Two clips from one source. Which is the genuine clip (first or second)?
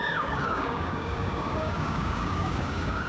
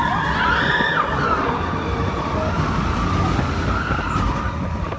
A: second